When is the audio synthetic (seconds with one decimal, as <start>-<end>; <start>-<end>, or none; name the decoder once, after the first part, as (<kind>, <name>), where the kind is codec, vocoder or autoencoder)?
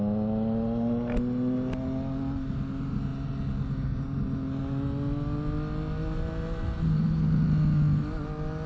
none